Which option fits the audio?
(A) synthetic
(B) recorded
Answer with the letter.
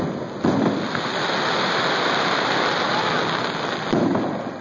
B